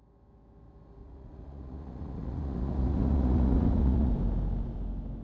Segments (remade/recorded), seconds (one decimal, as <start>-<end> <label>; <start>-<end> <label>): 0.0-1.0 recorded; 1.0-4.1 remade; 4.1-5.2 recorded